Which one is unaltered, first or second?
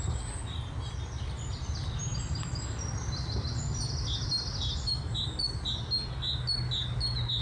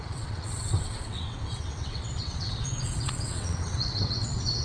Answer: first